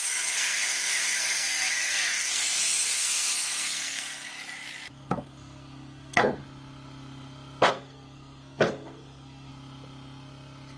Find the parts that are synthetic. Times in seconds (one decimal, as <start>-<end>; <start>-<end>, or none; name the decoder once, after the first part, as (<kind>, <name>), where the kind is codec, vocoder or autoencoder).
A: 0.0-4.3 (codec, SNAC); 4.9-6.4; 7.7-9.5